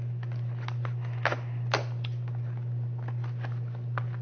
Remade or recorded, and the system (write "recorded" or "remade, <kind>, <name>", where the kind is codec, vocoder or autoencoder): recorded